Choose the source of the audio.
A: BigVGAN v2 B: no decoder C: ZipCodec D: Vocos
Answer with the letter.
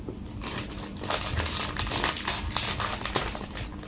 B